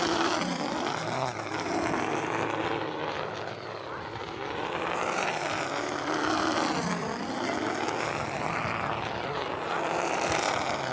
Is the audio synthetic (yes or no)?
no